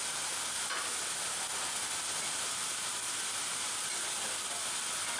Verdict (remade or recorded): recorded